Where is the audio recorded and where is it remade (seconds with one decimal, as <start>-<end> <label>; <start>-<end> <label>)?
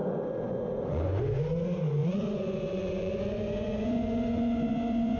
0.0-1.2 remade; 1.2-2.0 recorded; 2.0-5.2 remade